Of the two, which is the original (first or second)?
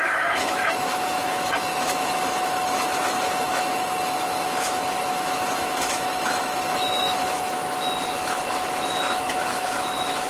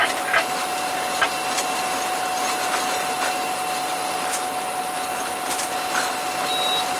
second